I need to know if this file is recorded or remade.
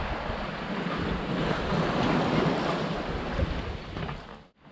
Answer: recorded